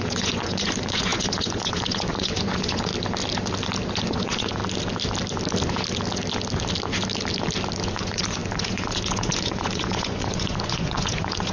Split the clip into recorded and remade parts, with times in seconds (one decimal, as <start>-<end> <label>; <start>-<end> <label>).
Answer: 0.0-2.9 remade; 2.9-3.9 recorded; 3.9-4.6 remade; 4.6-7.9 recorded; 7.9-11.5 remade